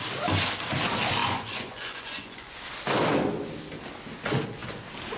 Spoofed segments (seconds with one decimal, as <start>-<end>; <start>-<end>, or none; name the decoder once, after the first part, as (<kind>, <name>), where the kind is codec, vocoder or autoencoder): 1.2-2.6 (vocoder, Vocos)